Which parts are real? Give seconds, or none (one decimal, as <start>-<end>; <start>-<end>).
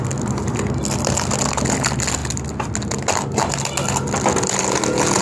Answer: 0.0-5.2